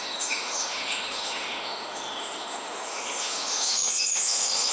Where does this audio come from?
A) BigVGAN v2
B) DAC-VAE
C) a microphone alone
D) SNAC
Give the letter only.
B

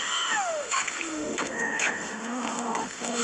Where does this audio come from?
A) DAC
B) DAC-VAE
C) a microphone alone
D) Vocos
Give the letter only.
B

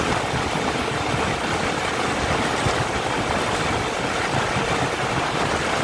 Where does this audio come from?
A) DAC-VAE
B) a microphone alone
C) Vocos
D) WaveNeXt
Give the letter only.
B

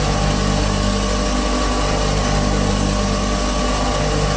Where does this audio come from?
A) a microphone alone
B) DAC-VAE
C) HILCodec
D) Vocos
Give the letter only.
A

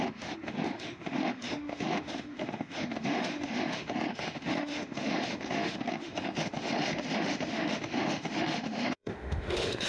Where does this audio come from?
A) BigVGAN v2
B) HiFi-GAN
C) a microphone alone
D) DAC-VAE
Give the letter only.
D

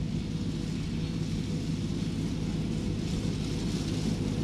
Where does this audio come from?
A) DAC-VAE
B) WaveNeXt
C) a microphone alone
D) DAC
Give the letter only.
C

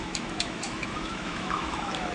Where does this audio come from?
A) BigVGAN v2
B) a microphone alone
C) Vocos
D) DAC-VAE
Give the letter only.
D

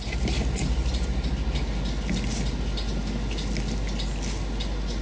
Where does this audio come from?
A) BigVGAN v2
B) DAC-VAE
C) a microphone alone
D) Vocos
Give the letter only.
C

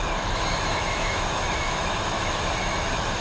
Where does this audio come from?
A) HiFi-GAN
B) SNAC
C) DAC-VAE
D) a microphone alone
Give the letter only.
C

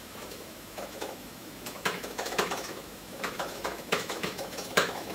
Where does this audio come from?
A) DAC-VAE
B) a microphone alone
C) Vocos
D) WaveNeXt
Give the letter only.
A